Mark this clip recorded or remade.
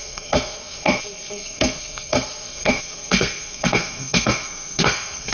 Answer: remade